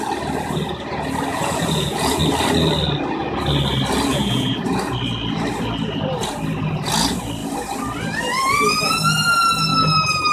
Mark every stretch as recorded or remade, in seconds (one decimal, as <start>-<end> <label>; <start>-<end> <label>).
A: 0.0-1.3 recorded; 1.3-2.2 remade; 2.2-4.1 recorded; 4.1-4.6 remade; 4.6-10.3 recorded